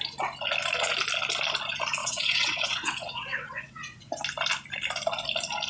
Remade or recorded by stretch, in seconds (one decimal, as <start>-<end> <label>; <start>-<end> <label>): 0.0-2.0 recorded; 2.0-4.1 remade; 4.1-5.7 recorded